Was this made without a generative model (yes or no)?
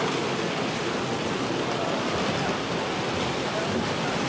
yes